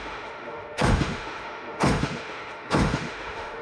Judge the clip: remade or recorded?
remade